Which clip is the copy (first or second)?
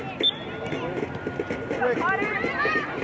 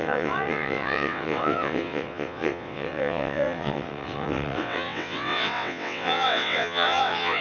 second